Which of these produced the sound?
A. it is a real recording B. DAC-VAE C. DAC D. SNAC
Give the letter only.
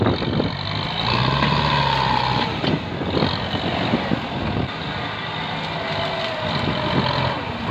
A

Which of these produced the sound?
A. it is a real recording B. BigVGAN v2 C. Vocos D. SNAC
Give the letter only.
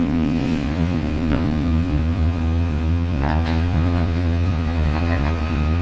C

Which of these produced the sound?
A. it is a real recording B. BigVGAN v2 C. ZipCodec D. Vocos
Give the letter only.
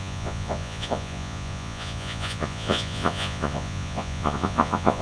D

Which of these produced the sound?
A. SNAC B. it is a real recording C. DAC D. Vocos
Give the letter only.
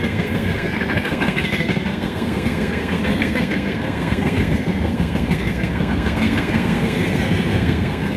A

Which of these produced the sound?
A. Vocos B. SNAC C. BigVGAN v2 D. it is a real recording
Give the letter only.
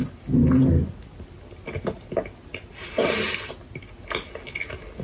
D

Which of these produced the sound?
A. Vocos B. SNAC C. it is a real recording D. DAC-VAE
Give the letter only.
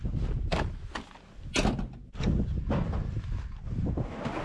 C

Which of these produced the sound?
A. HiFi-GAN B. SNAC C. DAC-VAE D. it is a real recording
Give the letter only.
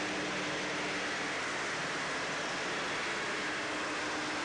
D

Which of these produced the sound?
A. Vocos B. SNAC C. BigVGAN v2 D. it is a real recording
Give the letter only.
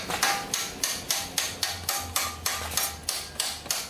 D